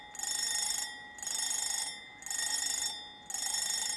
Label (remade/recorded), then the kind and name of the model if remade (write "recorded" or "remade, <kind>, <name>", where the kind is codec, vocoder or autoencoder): recorded